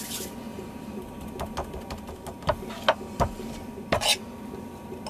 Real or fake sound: real